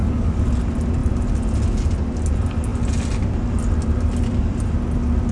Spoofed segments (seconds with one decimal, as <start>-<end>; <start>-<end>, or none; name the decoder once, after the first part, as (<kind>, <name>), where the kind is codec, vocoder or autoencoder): 0.0-0.5 (codec, DAC)

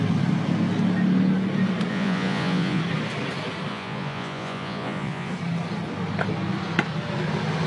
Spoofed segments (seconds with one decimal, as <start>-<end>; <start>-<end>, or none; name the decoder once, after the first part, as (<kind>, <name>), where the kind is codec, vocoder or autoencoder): 1.9-2.8 (vocoder, Vocos); 3.7-5.3

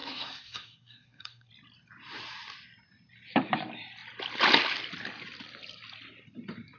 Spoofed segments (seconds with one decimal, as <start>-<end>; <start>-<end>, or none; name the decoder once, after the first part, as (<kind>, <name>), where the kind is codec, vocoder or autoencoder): 0.0-1.5 (codec, SNAC)

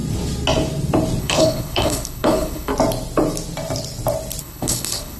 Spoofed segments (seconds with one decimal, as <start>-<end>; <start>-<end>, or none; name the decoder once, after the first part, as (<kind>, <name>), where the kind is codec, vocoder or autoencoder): 1.2-2.7 (codec, HILCodec); 4.4-5.2

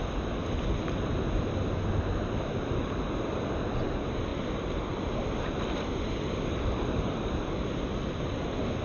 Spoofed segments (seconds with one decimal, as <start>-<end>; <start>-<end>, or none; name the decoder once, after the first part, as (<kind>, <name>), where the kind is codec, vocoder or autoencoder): none

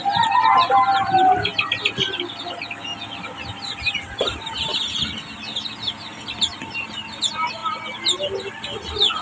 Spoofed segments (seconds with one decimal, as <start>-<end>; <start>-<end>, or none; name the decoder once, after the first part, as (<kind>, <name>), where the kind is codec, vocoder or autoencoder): none

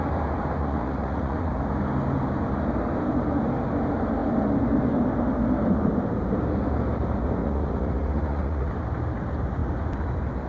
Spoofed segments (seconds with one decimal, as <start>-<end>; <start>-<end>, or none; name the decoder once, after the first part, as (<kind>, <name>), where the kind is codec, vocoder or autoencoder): 0.6-1.5 (vocoder, Vocos); 7.4-8.7

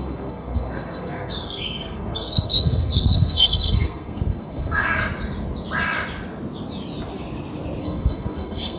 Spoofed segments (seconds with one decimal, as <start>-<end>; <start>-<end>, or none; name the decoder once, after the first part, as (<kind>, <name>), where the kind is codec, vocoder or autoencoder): 0.0-5.0 (codec, SNAC); 7.8-8.8